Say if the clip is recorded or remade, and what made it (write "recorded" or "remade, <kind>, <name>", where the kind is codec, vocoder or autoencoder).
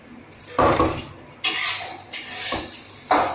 remade, vocoder, BigVGAN v2